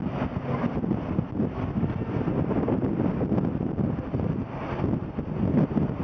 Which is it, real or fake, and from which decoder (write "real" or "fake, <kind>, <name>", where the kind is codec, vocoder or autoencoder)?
real